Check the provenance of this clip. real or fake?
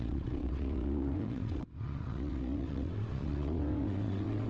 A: fake